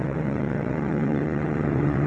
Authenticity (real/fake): fake